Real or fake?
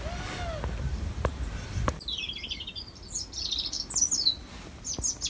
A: real